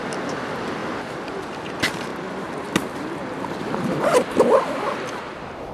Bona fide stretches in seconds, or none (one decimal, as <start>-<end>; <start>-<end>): 2.1-5.2